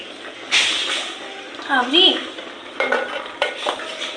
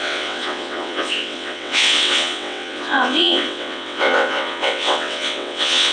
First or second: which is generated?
second